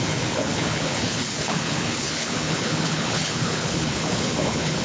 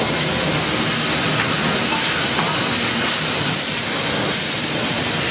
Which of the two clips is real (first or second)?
second